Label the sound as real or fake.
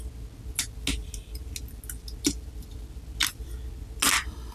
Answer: real